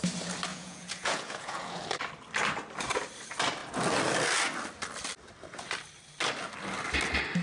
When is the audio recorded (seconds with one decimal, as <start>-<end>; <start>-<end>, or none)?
0.0-0.5; 1.8-7.4